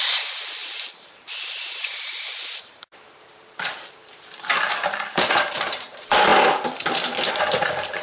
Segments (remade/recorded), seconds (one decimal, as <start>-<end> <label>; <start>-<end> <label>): 0.0-6.3 remade; 6.3-7.3 recorded; 7.3-8.0 remade